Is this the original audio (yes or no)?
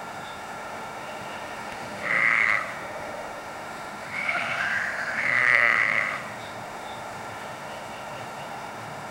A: no